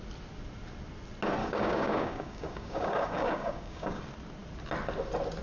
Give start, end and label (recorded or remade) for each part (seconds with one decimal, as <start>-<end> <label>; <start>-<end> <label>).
0.0-1.4 recorded; 1.4-4.0 remade; 4.0-5.4 recorded

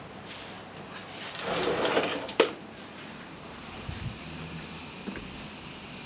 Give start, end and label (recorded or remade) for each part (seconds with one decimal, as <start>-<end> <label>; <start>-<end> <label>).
0.0-2.1 recorded; 2.1-4.6 remade; 4.6-6.1 recorded

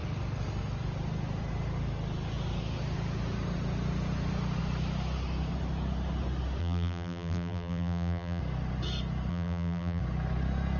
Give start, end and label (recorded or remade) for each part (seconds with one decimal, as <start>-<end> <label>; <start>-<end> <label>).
0.0-6.6 recorded; 6.6-8.4 remade; 8.4-9.3 recorded; 9.3-10.0 remade; 10.0-10.8 recorded

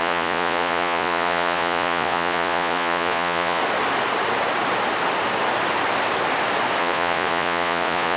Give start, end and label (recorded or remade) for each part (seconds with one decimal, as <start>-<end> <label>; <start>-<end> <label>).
0.0-3.6 remade; 3.6-6.8 recorded; 6.8-8.2 remade